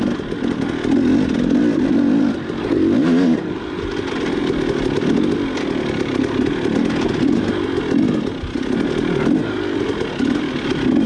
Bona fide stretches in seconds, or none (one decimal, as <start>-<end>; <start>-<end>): 0.0-11.1